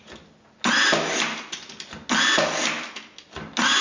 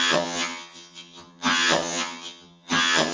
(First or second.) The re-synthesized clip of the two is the second